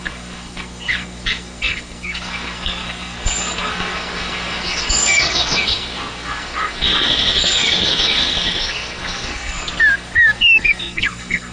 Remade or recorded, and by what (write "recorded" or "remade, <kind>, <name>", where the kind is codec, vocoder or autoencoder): remade, codec, SNAC